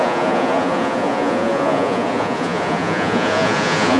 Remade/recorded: remade